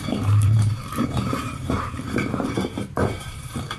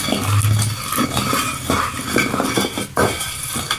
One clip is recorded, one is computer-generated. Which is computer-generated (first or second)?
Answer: first